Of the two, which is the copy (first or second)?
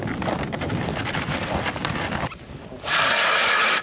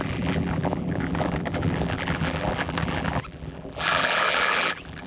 second